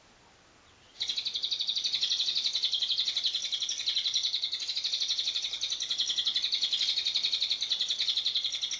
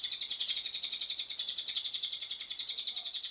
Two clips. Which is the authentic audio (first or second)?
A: first